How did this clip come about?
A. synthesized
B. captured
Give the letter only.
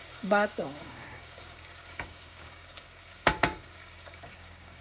A